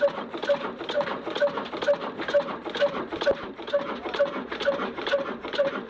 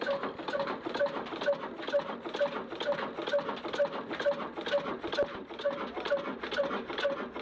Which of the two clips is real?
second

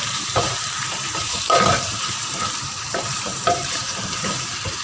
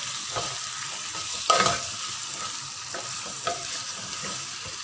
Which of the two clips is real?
second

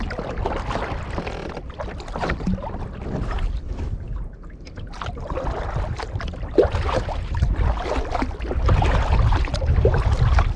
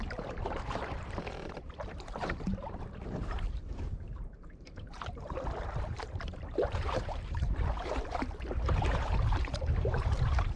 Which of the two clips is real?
first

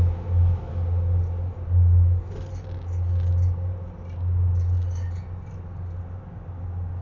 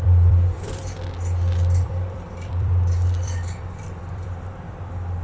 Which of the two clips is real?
first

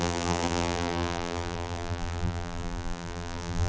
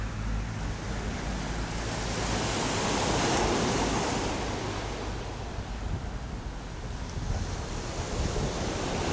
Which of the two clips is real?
second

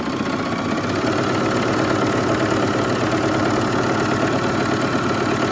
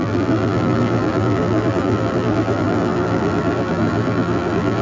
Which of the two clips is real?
first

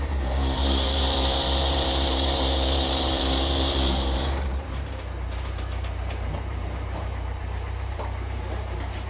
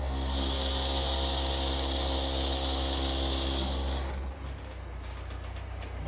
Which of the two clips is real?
second